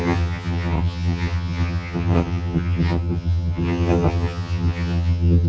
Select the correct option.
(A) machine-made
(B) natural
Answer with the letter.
A